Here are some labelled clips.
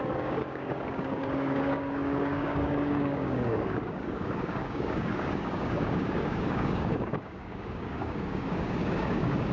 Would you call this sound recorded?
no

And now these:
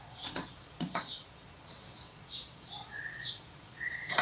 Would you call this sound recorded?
no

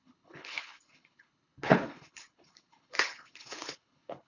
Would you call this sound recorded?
no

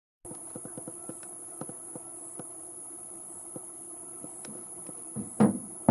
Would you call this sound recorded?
yes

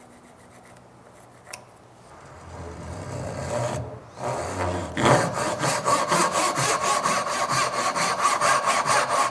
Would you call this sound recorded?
yes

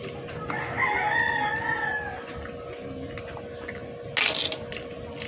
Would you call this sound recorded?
yes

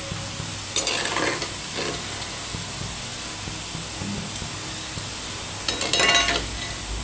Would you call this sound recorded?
yes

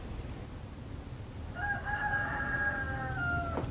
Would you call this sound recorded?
yes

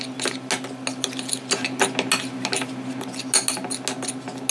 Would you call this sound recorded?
yes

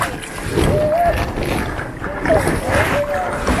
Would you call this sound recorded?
yes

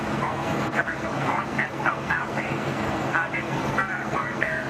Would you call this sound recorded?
no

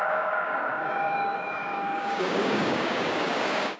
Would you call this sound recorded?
no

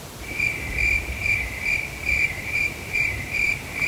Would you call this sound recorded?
no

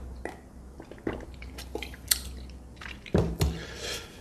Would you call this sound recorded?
yes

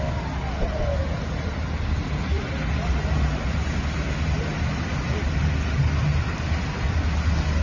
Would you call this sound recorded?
yes